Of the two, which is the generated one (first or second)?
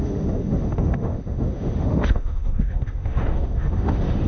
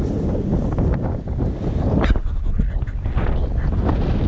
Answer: first